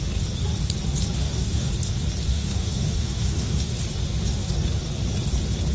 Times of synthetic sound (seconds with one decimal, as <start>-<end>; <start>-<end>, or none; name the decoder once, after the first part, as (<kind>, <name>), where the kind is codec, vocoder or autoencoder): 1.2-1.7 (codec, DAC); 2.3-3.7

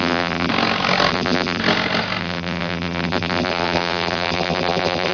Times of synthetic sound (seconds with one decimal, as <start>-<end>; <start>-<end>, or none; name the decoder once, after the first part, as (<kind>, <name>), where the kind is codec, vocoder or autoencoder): 0.0-0.5 (vocoder, BigVGAN v2); 1.1-1.6; 2.2-5.1

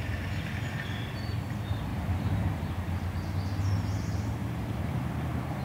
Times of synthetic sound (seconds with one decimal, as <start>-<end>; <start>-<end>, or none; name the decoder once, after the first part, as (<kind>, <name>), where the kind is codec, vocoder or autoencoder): 1.9-2.6 (vocoder, BigVGAN v2); 4.4-5.6

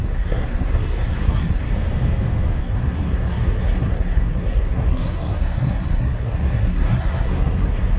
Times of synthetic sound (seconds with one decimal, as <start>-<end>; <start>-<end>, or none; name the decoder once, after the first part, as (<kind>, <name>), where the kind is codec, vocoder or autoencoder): 0.0-1.7 (codec, SNAC); 2.6-8.0

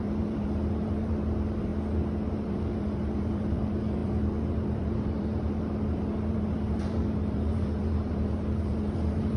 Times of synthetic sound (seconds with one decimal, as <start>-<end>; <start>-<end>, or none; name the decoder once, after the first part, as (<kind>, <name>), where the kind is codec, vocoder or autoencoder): 0.0-1.7 (vocoder, BigVGAN v2); 2.3-9.4